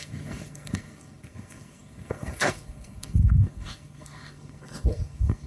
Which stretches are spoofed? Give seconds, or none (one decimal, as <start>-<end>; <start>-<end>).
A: 0.0-5.5